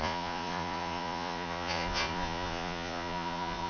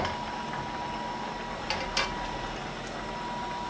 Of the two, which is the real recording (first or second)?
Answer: second